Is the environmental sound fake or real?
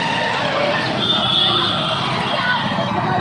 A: real